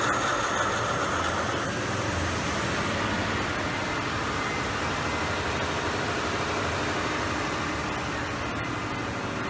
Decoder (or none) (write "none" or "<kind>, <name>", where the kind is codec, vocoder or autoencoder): none